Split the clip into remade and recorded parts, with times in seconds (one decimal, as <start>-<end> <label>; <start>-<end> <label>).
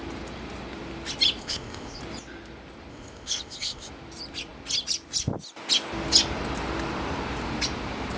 0.0-1.4 recorded; 1.4-2.0 remade; 2.0-2.9 recorded; 2.9-3.9 remade; 3.9-8.2 recorded